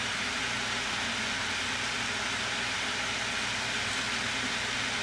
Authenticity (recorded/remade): recorded